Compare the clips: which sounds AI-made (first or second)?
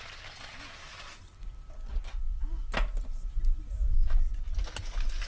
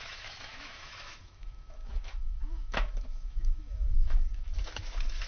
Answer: second